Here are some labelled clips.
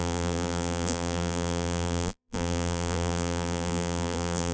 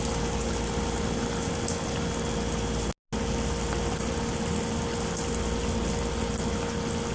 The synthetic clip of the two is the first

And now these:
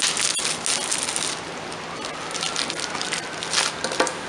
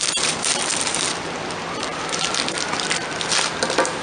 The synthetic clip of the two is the second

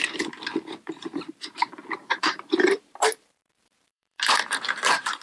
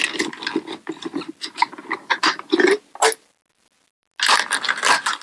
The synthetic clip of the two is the first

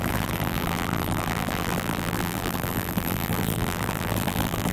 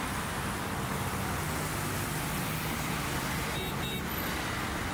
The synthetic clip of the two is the first